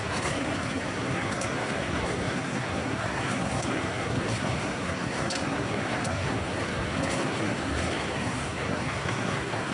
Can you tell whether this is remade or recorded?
remade